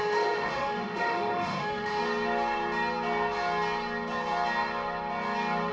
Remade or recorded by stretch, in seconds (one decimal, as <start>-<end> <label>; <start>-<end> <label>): 0.0-2.0 remade; 2.0-5.7 recorded